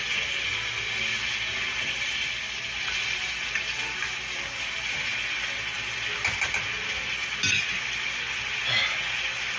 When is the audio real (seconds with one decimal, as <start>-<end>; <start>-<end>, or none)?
0.0-9.6